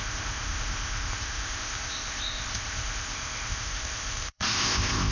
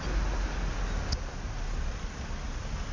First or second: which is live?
second